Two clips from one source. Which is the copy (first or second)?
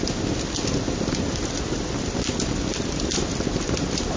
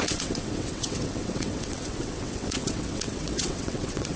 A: second